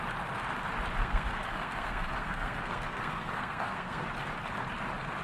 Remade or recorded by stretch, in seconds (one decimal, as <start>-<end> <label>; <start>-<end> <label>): 0.0-1.0 recorded; 1.0-4.1 remade; 4.1-5.2 recorded